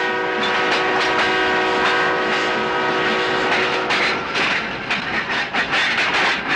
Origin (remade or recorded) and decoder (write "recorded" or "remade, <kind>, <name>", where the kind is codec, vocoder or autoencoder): recorded